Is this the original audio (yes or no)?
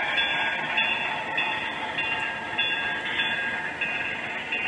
yes